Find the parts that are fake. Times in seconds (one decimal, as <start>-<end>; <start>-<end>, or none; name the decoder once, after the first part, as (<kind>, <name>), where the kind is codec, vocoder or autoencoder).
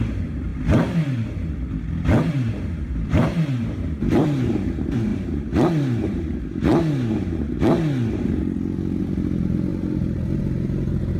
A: 0.0-0.5 (vocoder, BigVGAN v2); 2.3-6.7; 9.0-11.2